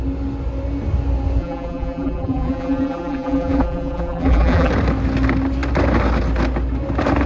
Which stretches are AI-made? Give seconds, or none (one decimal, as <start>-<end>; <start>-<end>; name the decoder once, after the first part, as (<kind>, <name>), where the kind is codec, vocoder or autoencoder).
1.4-4.7 (vocoder, BigVGAN v2)